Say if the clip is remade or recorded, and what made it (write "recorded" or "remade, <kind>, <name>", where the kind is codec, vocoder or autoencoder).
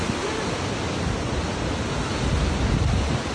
recorded